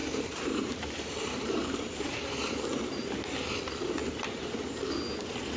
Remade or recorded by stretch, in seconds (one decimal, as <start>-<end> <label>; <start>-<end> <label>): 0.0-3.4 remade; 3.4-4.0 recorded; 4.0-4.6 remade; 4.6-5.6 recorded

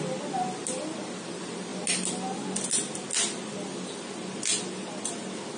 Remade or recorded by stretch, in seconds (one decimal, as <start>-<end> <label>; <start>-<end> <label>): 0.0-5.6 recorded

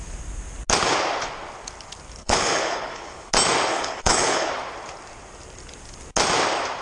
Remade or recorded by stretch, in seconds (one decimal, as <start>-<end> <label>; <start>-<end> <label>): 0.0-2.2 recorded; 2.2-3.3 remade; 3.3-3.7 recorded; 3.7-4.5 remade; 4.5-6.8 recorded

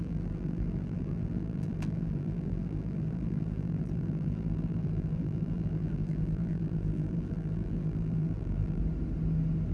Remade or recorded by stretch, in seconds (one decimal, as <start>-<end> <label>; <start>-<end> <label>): 0.0-8.8 remade; 8.8-9.7 recorded

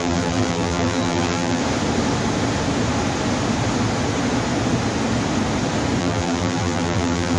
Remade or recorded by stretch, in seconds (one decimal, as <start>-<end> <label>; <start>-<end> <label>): 0.0-1.6 remade; 1.6-6.0 recorded; 6.0-7.4 remade

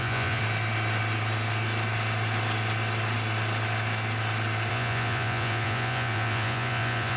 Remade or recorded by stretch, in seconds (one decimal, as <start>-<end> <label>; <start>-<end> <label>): 0.0-0.4 remade; 0.4-4.7 recorded; 4.7-7.2 remade

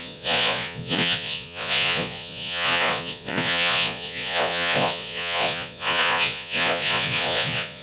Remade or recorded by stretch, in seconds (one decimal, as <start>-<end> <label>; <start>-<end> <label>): 0.0-7.8 remade